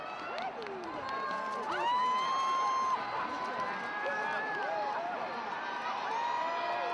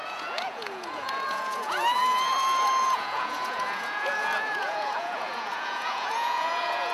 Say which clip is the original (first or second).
first